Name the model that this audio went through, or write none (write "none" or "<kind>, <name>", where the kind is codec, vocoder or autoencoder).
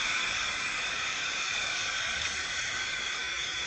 codec, DAC